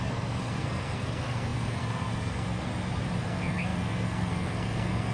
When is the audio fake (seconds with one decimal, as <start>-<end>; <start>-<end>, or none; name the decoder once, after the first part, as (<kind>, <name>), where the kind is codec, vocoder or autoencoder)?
0.0-2.7 (codec, SNAC); 3.2-5.1